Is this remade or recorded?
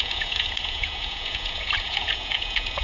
remade